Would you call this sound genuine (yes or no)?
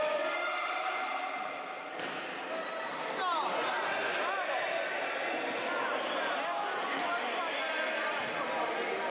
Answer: yes